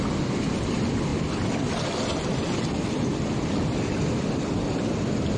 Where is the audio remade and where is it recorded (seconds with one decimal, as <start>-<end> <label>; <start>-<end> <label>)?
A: 0.0-5.4 recorded